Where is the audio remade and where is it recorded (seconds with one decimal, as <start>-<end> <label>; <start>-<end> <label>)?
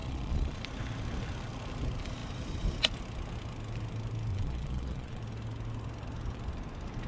0.0-0.6 remade; 0.6-4.3 recorded; 4.3-5.2 remade; 5.2-7.1 recorded